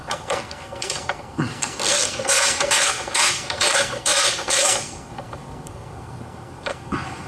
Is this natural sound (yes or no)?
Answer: no